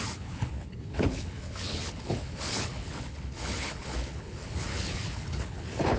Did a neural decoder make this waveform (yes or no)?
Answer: yes